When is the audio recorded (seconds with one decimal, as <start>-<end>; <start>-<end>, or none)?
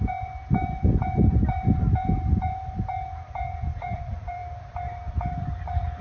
4.4-5.1